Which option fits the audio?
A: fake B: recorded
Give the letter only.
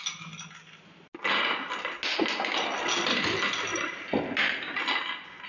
B